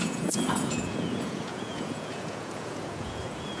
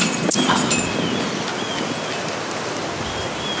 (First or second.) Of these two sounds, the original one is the second